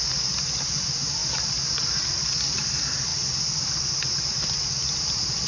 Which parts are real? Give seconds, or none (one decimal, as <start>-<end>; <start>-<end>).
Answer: 0.0-5.5

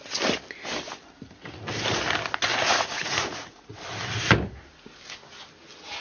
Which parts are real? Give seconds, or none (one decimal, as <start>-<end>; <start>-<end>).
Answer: 0.0-2.5; 3.7-6.0

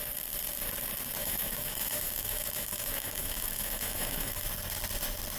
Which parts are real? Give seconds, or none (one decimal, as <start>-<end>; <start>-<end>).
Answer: 0.0-1.2; 4.4-5.4

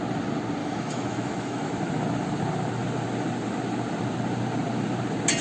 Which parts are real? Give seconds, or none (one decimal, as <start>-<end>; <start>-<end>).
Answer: 0.0-0.6; 1.7-5.4

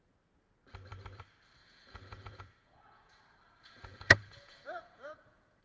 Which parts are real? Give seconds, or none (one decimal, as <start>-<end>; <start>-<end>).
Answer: 0.0-1.6; 3.2-3.6